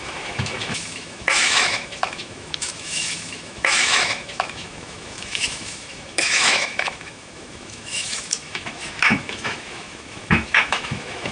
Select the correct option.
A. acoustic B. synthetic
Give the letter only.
B